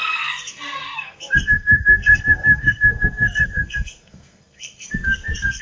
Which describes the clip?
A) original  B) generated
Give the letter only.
B